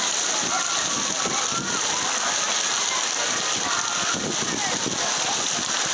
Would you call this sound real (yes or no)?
yes